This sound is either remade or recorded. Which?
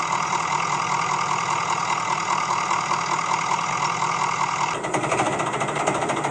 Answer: recorded